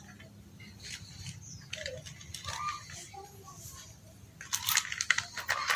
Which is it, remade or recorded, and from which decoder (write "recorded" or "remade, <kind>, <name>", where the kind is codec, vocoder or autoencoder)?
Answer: recorded